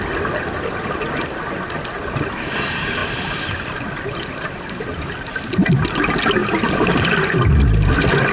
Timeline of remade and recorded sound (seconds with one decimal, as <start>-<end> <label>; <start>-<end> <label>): 0.0-3.0 recorded; 3.0-4.2 remade; 4.2-8.3 recorded